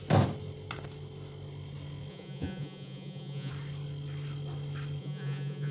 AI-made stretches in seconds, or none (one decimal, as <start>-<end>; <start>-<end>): 2.1-3.5; 5.0-5.7

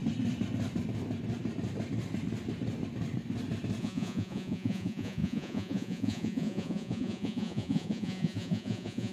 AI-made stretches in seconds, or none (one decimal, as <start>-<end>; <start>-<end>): 3.8-9.1

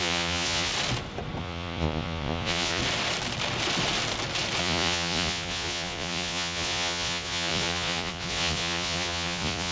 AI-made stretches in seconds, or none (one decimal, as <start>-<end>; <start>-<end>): 0.0-0.7; 1.4-2.8; 4.6-9.7